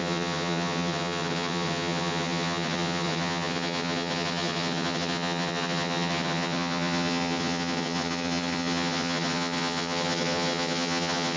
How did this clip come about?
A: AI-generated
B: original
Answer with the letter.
A